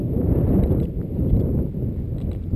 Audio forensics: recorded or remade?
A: remade